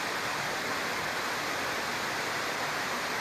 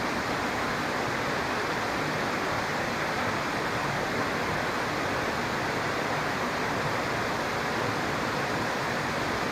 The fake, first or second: first